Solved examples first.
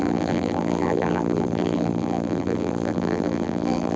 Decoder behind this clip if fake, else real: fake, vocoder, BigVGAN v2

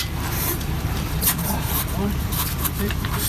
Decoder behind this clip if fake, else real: fake, vocoder, BigVGAN v2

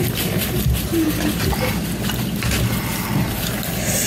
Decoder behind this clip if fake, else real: real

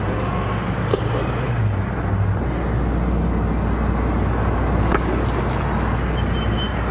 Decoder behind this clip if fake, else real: real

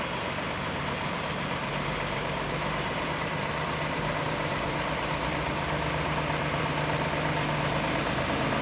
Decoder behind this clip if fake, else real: fake, vocoder, BigVGAN v2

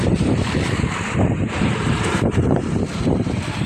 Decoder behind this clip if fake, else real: fake, vocoder, BigVGAN v2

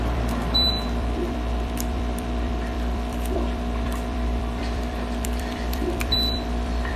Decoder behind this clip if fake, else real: fake, vocoder, BigVGAN v2